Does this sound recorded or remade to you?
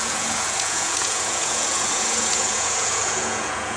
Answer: remade